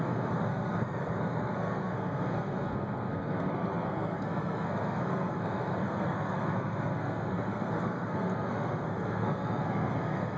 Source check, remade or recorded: remade